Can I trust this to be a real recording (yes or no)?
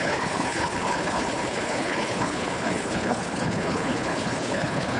no